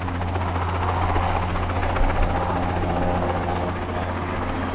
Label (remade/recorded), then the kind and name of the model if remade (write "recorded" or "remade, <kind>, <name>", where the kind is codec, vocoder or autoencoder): recorded